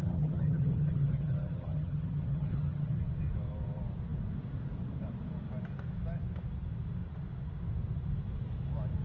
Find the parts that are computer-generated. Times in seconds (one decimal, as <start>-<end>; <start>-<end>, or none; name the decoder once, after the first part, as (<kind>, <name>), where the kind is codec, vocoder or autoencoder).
0.0-3.0 (vocoder, HiFi-GAN)